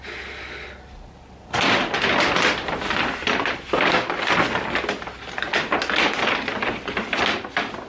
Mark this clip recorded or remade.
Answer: recorded